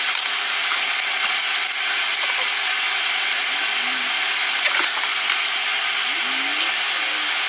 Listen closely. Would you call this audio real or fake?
real